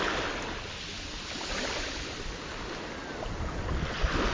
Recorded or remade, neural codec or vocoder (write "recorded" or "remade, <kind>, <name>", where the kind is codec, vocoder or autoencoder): recorded